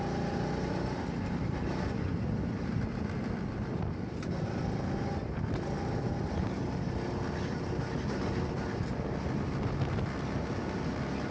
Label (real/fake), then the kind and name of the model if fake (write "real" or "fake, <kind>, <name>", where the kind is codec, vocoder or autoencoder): real